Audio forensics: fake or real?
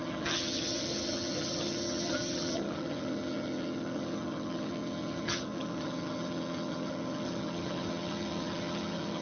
fake